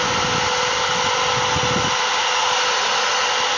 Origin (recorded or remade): recorded